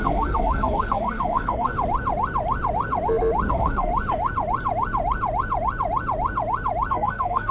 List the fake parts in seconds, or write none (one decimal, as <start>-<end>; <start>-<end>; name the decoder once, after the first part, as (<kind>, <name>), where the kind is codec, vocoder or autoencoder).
0.0-1.7 (codec, SNAC); 3.5-3.9; 6.9-7.5